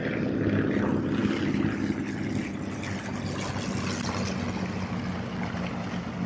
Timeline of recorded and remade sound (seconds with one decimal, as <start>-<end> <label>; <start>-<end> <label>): 0.0-6.3 recorded